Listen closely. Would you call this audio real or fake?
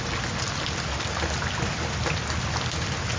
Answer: real